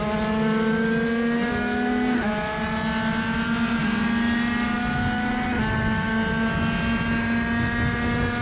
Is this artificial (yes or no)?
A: no